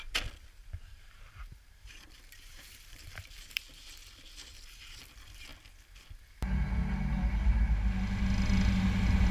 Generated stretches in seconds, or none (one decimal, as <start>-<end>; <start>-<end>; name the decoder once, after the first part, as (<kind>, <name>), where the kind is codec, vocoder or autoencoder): 0.6-3.6 (vocoder, BigVGAN v2)